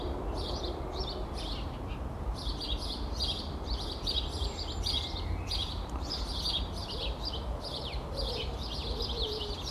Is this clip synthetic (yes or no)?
yes